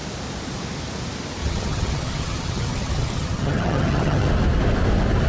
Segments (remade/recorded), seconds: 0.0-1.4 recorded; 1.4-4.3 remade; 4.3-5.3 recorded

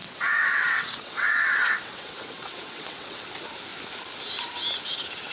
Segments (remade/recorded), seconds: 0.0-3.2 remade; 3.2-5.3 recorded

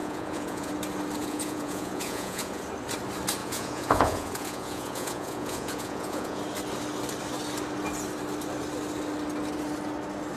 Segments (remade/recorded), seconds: 0.0-0.7 remade; 0.7-1.2 recorded; 1.2-2.6 remade; 2.6-3.4 recorded; 3.4-6.4 remade; 6.4-10.4 recorded

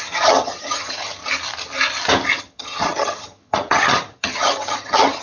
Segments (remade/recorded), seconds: 0.0-1.2 remade; 1.2-2.4 recorded; 2.4-5.2 remade

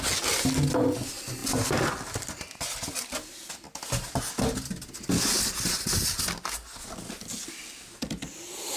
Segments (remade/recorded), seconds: 0.0-8.8 recorded